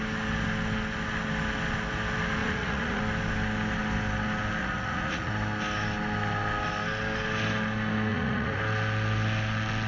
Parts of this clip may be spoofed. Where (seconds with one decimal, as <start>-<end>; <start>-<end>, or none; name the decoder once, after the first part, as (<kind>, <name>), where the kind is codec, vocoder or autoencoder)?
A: 2.4-3.0 (vocoder, Vocos); 4.6-5.3; 8.1-8.6